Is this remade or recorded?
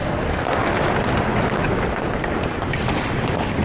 recorded